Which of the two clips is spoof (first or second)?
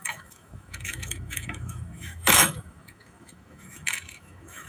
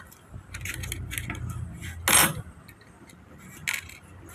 first